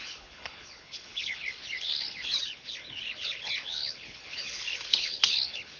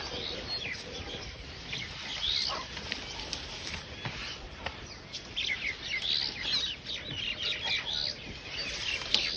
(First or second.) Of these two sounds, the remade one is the first